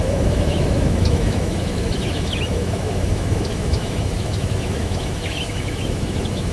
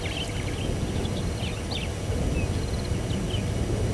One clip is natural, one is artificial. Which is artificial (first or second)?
first